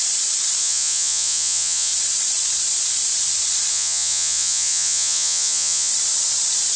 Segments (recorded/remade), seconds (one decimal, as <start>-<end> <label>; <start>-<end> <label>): 0.0-0.6 recorded; 0.6-1.9 remade; 1.9-3.7 recorded; 3.7-5.9 remade; 5.9-6.8 recorded